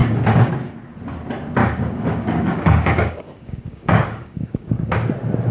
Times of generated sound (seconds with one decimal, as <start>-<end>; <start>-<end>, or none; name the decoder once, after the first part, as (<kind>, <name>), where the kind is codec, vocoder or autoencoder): 0.0-0.5 (codec, DAC); 1.6-4.9